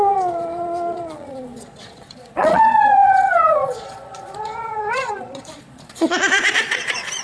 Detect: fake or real fake